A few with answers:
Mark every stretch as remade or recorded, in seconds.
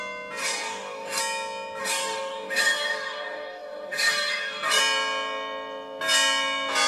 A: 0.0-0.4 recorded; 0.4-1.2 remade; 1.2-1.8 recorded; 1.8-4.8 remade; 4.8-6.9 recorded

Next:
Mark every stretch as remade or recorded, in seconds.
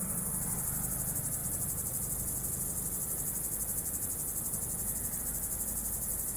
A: 0.0-1.4 recorded; 1.4-5.2 remade; 5.2-6.4 recorded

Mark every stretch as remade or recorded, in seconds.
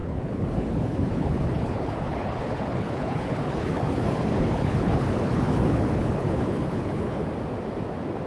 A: 0.0-7.2 remade; 7.2-8.3 recorded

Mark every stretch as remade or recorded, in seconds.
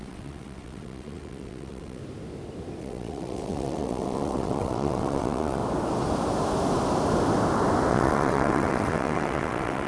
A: 0.0-2.0 remade; 2.0-2.8 recorded; 2.8-5.6 remade; 5.6-7.9 recorded; 7.9-9.9 remade